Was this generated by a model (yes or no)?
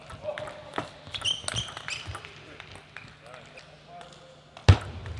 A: no